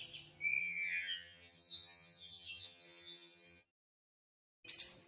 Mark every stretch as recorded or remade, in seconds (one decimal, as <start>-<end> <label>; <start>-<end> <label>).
0.0-0.6 recorded; 0.6-3.7 remade; 3.7-5.1 recorded